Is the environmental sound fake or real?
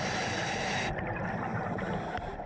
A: real